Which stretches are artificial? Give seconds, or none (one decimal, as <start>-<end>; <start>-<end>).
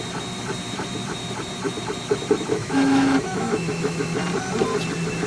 2.6-4.2